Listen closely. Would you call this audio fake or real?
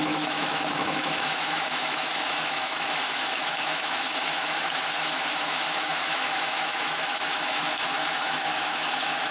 fake